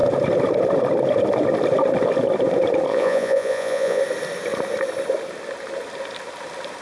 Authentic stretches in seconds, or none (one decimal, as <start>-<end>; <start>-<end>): 0.0-2.9; 4.0-6.8